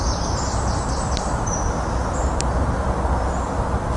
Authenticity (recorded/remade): recorded